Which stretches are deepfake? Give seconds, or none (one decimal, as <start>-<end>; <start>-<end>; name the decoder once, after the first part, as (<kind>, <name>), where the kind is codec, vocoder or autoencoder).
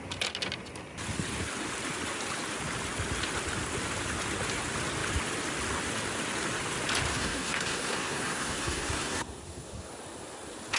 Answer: 7.1-9.9 (codec, SNAC)